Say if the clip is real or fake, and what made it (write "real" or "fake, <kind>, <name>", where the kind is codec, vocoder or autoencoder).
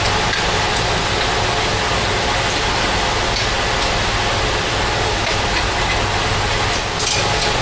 real